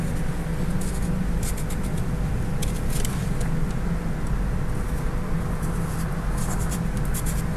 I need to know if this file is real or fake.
real